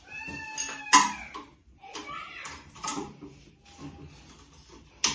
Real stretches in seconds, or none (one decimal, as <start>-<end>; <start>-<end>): 0.0-1.6; 3.5-5.1